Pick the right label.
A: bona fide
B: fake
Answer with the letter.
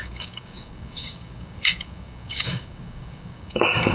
B